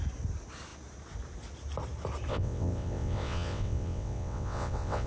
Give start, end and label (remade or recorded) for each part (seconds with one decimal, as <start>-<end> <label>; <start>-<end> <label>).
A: 0.0-2.3 recorded; 2.3-5.1 remade